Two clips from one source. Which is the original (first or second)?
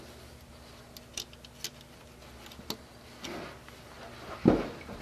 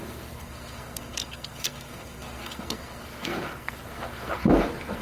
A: first